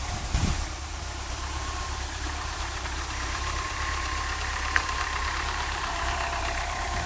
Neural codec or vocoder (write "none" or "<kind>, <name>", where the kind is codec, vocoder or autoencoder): vocoder, BigVGAN v2